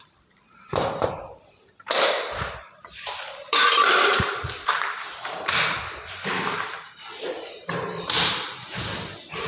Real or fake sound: fake